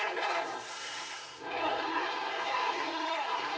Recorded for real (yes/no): no